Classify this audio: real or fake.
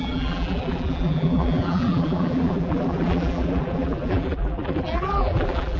fake